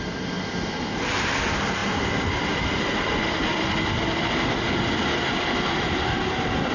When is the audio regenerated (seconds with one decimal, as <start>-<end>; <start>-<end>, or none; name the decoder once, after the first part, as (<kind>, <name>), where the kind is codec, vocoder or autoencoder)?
none

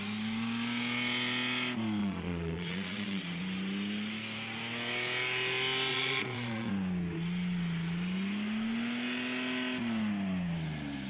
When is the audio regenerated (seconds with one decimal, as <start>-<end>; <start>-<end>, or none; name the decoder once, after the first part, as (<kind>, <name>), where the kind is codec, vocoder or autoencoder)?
2.0-3.4 (vocoder, Vocos); 5.9-6.7

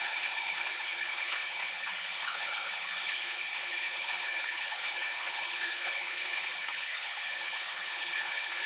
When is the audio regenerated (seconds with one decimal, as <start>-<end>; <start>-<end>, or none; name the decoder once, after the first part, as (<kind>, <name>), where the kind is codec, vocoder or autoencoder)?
0.0-8.7 (codec, HILCodec)

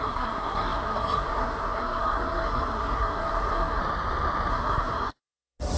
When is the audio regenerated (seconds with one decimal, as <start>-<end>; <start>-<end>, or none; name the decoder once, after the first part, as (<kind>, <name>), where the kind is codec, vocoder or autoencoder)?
0.0-3.8 (codec, SNAC); 4.5-5.8

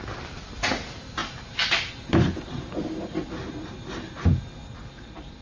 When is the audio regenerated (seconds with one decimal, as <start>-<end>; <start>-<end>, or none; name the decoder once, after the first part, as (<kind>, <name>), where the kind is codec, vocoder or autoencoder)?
none